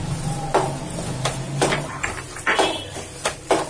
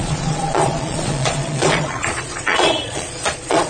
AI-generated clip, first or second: second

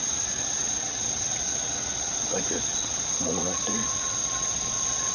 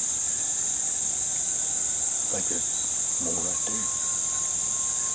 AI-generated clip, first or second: first